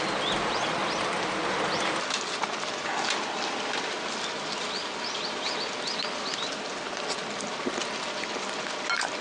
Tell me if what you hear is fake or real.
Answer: real